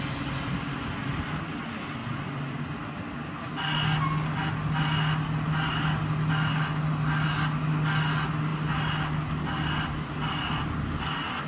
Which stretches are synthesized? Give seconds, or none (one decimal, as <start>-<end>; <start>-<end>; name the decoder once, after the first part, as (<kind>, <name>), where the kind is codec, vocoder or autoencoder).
1.0-1.5 (vocoder, BigVGAN v2)

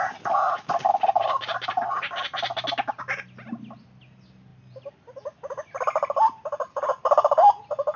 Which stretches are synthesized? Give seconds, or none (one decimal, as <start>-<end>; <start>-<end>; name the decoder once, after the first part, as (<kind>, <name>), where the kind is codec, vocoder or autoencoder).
none

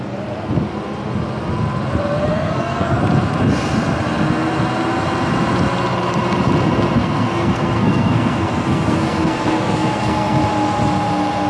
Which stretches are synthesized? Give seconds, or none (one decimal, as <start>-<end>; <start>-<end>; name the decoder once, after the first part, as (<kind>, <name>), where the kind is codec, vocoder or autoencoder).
2.3-3.0 (codec, SNAC); 7.0-10.4

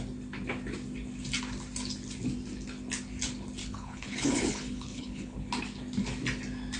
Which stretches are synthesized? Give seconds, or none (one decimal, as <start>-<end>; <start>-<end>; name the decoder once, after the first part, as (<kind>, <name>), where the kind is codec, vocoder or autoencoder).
3.6-5.5 (codec, HILCodec)

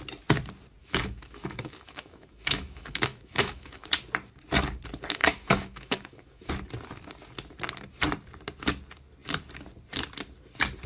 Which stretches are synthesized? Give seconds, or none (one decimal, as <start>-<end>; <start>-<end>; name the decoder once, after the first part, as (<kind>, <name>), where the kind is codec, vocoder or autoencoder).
0.8-3.9 (autoencoder, DAC-VAE); 5.2-6.5

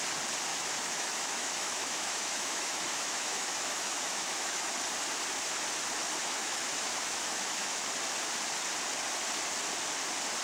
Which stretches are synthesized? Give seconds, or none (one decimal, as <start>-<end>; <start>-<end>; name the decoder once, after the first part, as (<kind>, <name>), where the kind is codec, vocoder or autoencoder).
0.5-4.7 (autoencoder, DAC-VAE); 6.2-7.9

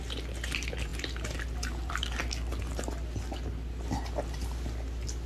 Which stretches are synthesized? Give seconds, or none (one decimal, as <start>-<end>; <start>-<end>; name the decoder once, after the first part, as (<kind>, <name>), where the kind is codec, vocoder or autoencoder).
none

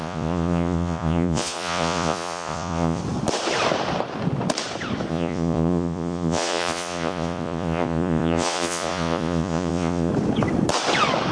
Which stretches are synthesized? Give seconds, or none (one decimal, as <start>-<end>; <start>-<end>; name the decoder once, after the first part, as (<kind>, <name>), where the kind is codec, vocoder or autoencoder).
0.0-3.0 (vocoder, Vocos); 5.1-10.1